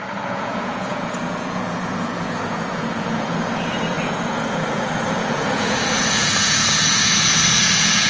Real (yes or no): no